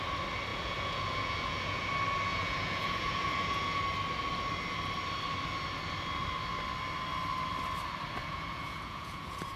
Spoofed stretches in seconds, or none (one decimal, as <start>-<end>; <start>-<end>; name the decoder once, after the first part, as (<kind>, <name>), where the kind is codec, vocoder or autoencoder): 0.5-1.9 (vocoder, Vocos); 2.3-3.8; 8.2-9.6